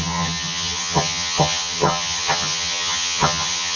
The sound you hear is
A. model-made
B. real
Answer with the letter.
A